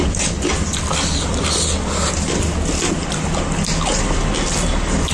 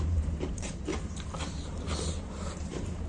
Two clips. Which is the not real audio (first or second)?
second